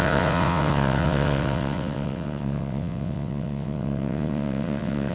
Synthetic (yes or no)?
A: yes